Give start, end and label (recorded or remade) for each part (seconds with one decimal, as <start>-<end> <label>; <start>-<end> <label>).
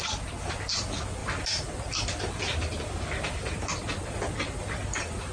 0.0-5.3 recorded